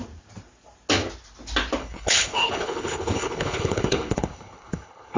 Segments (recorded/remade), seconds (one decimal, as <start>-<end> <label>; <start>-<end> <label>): 0.0-1.8 recorded; 1.8-5.2 remade